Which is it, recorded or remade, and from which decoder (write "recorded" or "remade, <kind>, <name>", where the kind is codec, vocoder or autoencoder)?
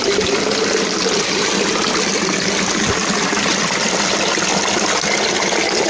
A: recorded